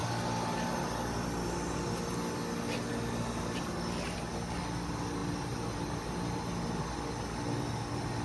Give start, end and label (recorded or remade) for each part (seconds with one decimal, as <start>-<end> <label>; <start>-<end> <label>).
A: 0.0-8.2 recorded